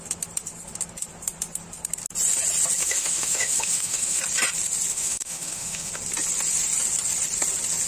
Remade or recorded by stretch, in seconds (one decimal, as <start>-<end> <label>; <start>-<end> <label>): 0.0-2.8 recorded; 2.8-4.2 remade; 4.2-4.9 recorded; 4.9-5.9 remade; 5.9-7.9 recorded